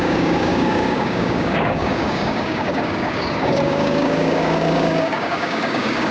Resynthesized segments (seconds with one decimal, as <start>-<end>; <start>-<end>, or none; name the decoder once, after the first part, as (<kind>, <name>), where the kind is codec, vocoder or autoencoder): 0.0-6.1 (codec, DAC)